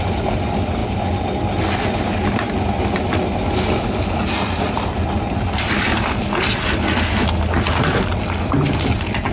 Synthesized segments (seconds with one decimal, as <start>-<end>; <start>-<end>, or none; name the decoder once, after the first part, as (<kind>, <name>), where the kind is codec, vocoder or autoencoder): none